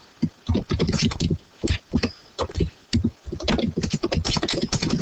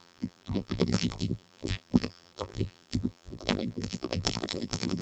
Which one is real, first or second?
first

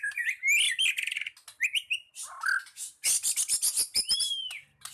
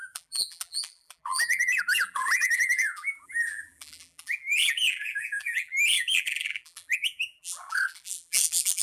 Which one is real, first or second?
first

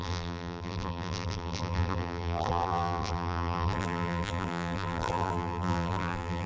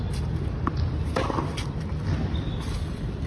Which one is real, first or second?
second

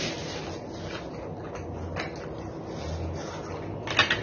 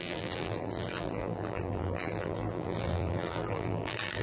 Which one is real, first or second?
first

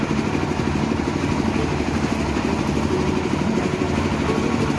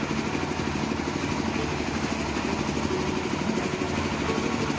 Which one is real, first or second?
second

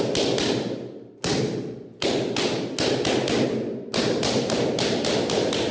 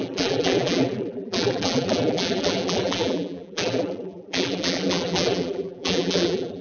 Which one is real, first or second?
first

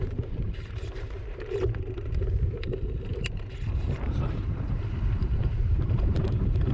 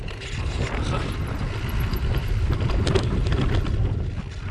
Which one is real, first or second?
second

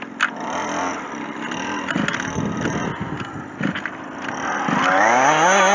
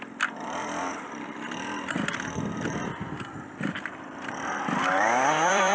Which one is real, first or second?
first